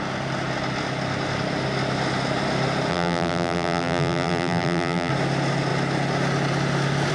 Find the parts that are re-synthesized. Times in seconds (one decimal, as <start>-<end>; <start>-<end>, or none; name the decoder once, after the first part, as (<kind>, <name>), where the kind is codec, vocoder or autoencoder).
2.9-5.1 (vocoder, BigVGAN v2)